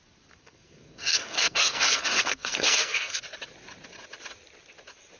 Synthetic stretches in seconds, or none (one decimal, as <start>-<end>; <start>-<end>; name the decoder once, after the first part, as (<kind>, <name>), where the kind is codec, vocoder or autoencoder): 0.4-3.2 (codec, SNAC)